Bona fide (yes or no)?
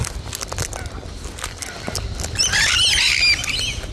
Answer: yes